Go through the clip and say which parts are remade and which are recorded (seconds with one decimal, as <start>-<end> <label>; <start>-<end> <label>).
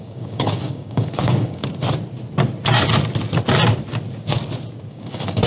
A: 0.0-1.6 remade; 1.6-4.9 recorded; 4.9-5.5 remade